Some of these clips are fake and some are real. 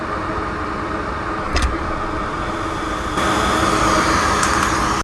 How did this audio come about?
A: real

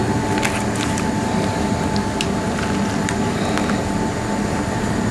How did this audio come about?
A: real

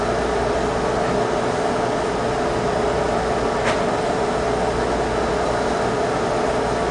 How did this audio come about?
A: real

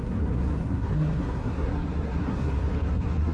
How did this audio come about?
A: fake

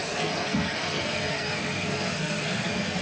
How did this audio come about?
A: fake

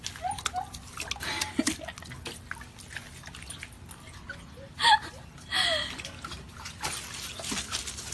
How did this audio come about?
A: real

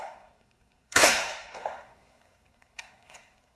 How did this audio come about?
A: fake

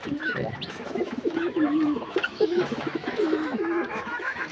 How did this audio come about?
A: fake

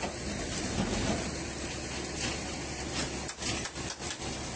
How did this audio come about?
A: real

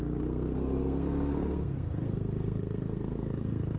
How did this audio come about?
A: fake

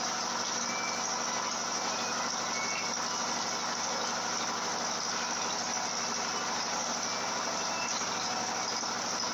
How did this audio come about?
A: real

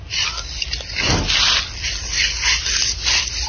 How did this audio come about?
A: real